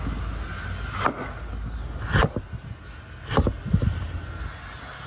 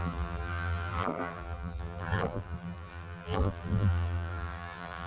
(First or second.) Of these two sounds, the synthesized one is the second